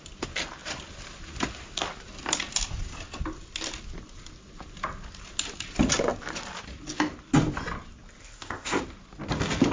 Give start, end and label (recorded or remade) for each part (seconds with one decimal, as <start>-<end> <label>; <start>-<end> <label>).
0.0-8.2 recorded; 8.2-8.8 remade; 8.8-9.7 recorded